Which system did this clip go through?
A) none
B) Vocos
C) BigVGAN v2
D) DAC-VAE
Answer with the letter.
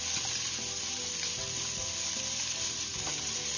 A